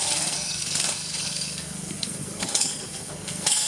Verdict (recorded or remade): remade